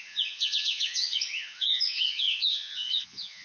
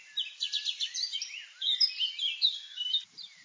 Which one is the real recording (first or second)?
second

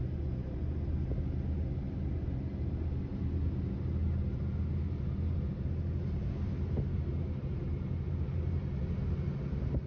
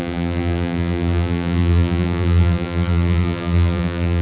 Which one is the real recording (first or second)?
first